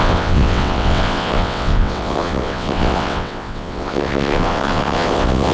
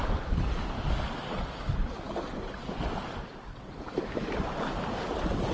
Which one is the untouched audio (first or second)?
second